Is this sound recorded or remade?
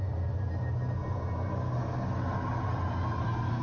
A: recorded